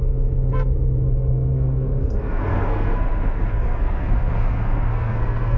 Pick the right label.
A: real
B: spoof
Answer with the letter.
B